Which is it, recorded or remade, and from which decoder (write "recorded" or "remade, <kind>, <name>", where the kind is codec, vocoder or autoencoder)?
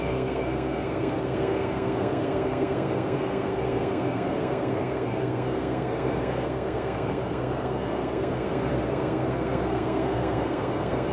remade, codec, SNAC